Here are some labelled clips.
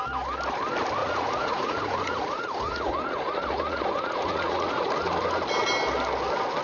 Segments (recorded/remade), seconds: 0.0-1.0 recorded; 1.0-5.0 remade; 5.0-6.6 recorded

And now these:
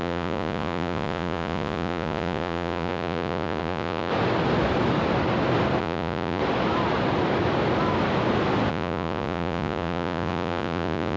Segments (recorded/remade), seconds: 0.0-4.1 remade; 4.1-5.8 recorded; 5.8-6.4 remade; 6.4-8.7 recorded; 8.7-11.2 remade

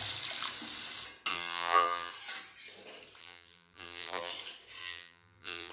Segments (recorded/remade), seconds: 0.0-1.3 recorded; 1.3-2.1 remade; 2.1-3.2 recorded; 3.2-4.3 remade; 4.3-4.8 recorded; 4.8-5.7 remade

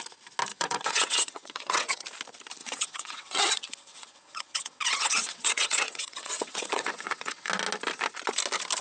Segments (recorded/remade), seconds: 0.0-0.5 recorded; 0.5-2.0 remade; 2.0-2.6 recorded; 2.6-7.5 remade; 7.5-8.8 recorded

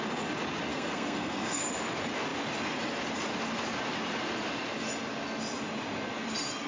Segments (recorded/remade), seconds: 0.0-0.7 recorded; 0.7-1.6 remade; 1.6-6.7 recorded

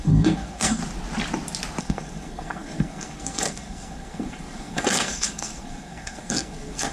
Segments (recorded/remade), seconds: 0.0-0.8 remade; 0.8-1.8 recorded; 1.8-6.9 remade

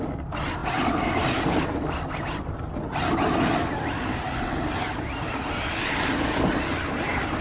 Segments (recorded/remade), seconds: 0.0-7.4 recorded